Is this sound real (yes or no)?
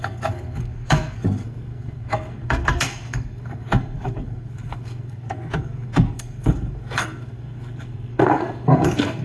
no